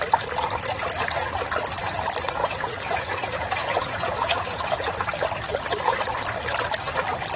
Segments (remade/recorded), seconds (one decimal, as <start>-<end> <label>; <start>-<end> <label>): 0.0-2.4 recorded; 2.4-4.9 remade; 4.9-7.4 recorded